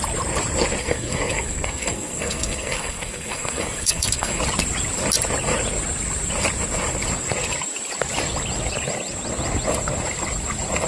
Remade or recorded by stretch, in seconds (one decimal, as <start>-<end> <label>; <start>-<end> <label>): 0.0-0.8 recorded; 0.8-4.4 remade; 4.4-10.9 recorded